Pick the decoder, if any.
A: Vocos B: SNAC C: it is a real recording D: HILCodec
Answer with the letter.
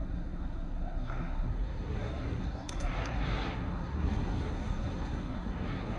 B